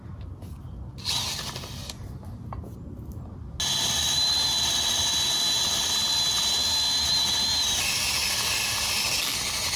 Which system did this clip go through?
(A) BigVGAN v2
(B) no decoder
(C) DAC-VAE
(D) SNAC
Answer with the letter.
B